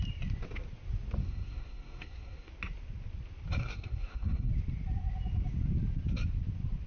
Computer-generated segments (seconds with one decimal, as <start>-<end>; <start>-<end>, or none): 1.2-2.5; 3.6-4.5